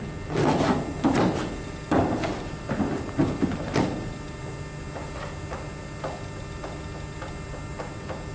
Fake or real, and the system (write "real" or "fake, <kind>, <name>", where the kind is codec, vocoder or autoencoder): real